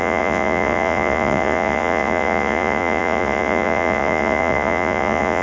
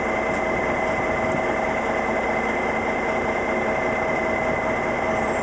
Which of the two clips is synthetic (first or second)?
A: first